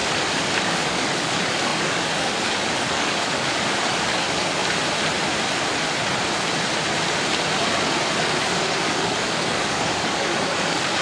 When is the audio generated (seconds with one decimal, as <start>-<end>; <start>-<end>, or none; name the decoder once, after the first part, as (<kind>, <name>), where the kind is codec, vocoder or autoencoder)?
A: 0.6-4.6 (codec, DAC); 8.2-11.0